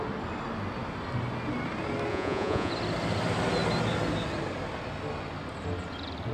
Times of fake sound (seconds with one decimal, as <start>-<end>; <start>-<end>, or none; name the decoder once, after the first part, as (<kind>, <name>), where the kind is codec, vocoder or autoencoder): 2.1-2.7 (vocoder, Vocos)